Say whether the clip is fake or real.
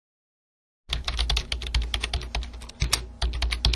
real